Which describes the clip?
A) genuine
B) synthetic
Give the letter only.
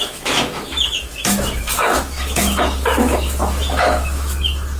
B